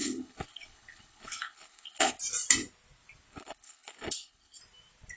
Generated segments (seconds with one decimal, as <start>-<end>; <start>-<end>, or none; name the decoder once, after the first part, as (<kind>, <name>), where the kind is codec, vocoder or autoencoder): 0.0-2.1 (codec, HILCodec); 3.3-4.6